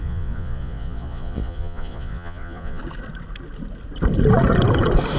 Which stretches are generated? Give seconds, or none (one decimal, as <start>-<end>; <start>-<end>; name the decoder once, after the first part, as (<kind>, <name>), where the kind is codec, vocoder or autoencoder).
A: 0.0-2.8 (vocoder, Vocos)